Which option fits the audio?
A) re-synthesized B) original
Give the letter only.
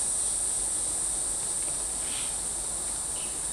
B